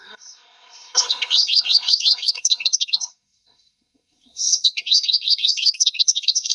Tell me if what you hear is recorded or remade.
remade